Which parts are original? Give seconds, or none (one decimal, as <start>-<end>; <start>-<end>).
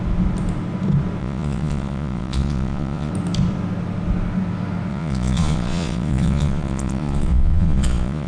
0.0-1.2; 3.1-4.9